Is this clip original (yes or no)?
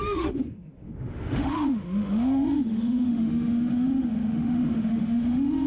no